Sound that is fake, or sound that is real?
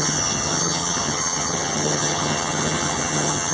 fake